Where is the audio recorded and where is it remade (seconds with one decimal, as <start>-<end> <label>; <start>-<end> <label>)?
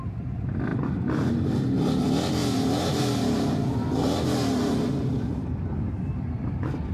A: 0.0-0.7 recorded; 0.7-1.3 remade; 1.3-2.4 recorded; 2.4-6.5 remade; 6.5-6.9 recorded